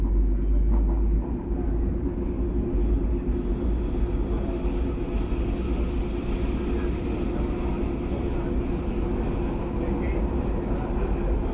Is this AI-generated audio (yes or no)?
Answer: no